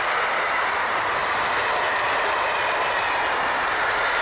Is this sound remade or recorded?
recorded